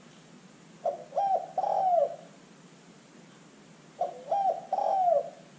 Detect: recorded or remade recorded